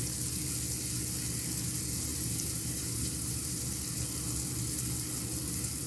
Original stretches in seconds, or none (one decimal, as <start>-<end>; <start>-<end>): 0.0-2.1; 3.7-5.9

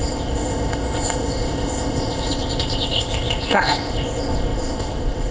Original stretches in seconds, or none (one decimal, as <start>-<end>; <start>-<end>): none